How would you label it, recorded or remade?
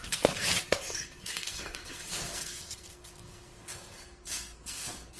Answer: remade